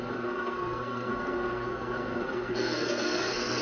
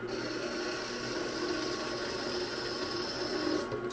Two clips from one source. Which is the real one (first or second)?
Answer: second